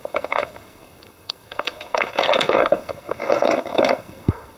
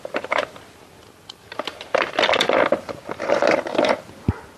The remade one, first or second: first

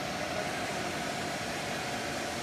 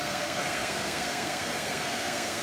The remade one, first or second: second